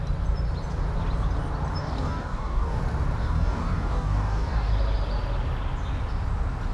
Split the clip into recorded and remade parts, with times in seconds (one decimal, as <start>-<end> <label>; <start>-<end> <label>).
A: 0.0-1.8 recorded; 1.8-2.8 remade; 2.8-3.2 recorded; 3.2-4.7 remade; 4.7-6.7 recorded

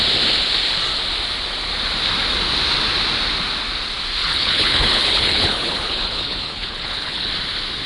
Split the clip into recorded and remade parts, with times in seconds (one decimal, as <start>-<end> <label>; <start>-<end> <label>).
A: 0.0-4.2 recorded; 4.2-7.3 remade; 7.3-7.9 recorded

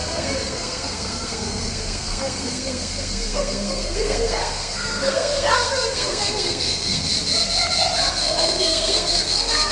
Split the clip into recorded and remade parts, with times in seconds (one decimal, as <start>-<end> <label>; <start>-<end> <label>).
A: 0.0-7.1 remade; 7.1-8.1 recorded; 8.1-9.7 remade

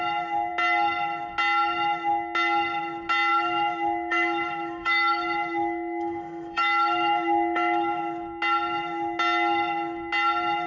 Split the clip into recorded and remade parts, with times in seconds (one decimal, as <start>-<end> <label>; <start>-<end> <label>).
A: 0.0-3.3 recorded; 3.3-8.0 remade; 8.0-10.7 recorded

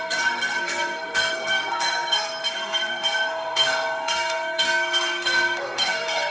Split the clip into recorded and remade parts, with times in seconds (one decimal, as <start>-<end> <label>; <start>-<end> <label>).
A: 0.0-6.3 remade

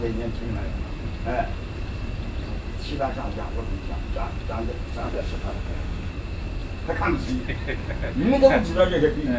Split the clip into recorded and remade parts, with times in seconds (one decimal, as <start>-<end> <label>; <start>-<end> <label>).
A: 0.0-5.0 recorded; 5.0-6.1 remade; 6.1-9.4 recorded

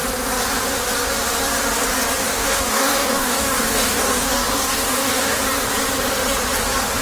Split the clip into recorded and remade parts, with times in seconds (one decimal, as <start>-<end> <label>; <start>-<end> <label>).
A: 0.0-2.2 recorded; 2.2-5.4 remade; 5.4-7.0 recorded

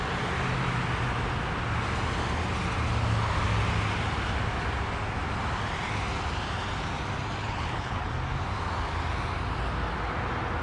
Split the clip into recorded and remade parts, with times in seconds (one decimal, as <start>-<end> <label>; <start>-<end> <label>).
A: 0.0-7.4 recorded; 7.4-8.1 remade; 8.1-10.6 recorded